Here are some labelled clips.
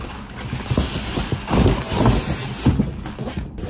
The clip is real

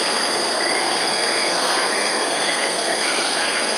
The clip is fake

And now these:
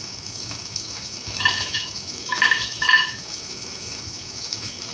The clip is fake